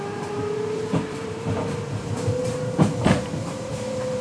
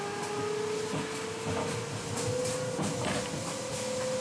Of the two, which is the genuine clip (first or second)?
second